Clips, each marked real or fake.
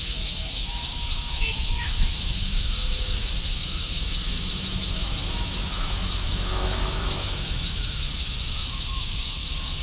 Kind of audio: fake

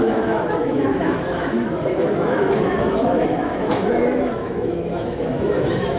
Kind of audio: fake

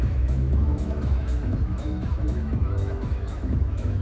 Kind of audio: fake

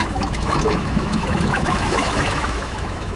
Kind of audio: fake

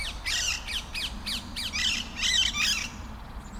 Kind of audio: real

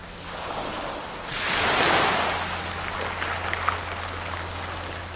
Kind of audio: real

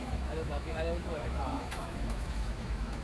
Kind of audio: fake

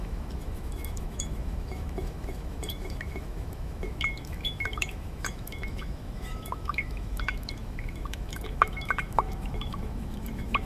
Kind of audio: fake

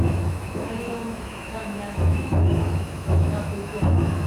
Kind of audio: fake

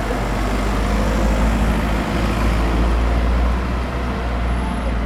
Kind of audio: real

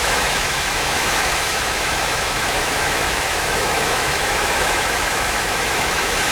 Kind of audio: fake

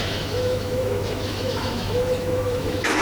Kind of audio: fake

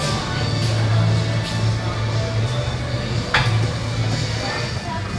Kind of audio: real